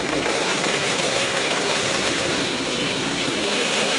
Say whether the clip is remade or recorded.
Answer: remade